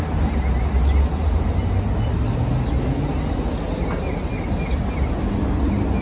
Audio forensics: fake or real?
real